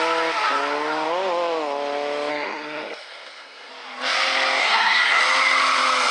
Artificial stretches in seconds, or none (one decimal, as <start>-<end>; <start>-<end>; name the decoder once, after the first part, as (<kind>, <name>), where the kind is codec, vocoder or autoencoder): 2.3-3.7 (codec, SNAC); 4.6-5.2